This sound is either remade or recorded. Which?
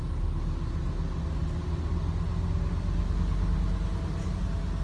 recorded